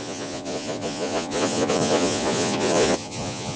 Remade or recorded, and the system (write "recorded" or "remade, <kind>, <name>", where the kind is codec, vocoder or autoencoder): remade, vocoder, Vocos